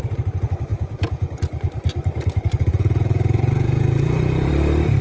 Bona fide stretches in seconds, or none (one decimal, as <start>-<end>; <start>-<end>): 0.0-0.7; 1.3-2.7; 4.5-5.0